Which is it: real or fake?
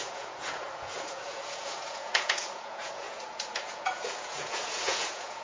fake